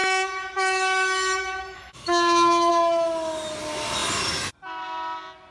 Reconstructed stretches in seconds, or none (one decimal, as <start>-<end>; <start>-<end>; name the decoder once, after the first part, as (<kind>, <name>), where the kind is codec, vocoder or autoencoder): 0.0-2.7 (autoencoder, DAC-VAE)